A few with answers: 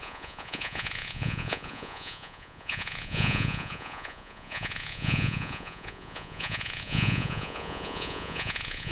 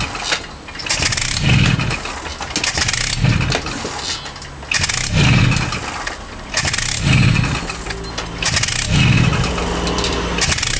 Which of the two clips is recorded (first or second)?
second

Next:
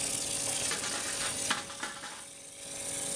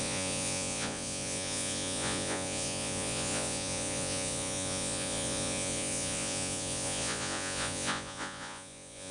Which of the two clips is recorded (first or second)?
first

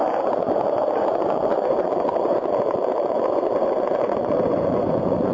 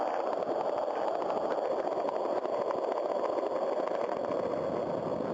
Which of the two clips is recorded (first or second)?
second